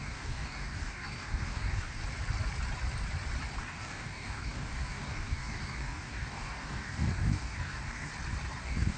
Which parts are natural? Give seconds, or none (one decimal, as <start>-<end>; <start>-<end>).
2.0-3.6; 8.1-8.6